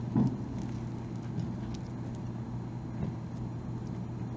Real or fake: real